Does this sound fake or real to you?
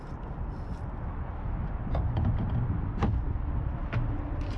real